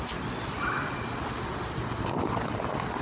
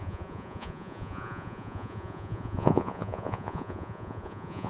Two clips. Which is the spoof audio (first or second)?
second